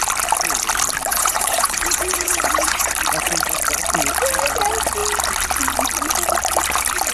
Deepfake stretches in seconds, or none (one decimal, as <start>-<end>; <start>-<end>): 1.1-2.9